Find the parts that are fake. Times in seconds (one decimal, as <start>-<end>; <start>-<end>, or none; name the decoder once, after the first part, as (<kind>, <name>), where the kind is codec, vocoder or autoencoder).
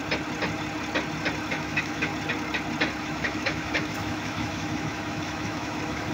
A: 1.5-2.1 (autoencoder, DAC-VAE); 3.0-6.1